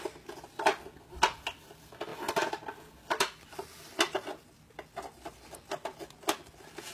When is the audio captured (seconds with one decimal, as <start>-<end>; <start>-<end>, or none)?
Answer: 0.0-6.9